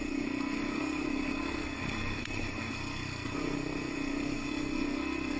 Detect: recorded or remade remade